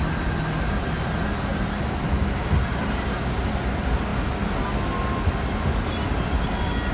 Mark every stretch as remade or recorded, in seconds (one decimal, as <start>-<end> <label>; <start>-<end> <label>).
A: 0.0-6.9 recorded